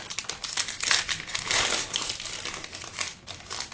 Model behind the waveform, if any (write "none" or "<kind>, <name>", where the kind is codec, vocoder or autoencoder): none